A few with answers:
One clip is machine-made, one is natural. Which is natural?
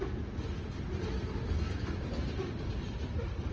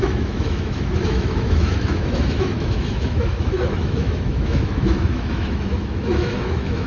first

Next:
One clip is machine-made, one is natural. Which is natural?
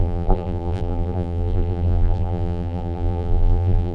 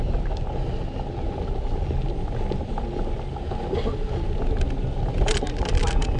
second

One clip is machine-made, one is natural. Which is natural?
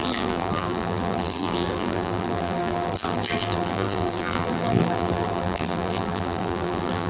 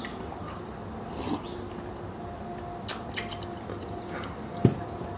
second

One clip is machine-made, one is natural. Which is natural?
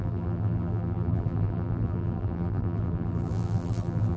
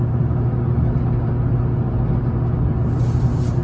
second